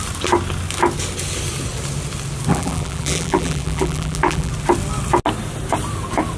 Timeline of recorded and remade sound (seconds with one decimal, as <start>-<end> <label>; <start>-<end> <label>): 0.0-2.5 recorded; 2.5-4.5 remade; 4.5-6.4 recorded